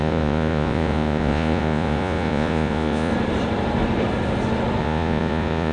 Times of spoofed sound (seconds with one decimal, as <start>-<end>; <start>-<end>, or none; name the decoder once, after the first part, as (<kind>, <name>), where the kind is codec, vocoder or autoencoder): 0.0-3.1 (vocoder, Vocos); 4.8-5.7